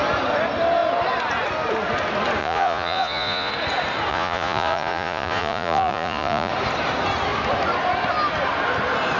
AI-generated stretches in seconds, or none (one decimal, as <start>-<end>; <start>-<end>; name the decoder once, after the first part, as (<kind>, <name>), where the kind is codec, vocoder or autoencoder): 2.4-3.5 (vocoder, Vocos); 4.1-6.5